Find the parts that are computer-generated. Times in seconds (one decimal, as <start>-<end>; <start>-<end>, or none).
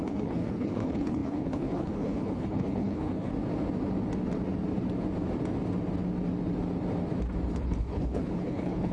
0.0-3.3; 7.6-8.9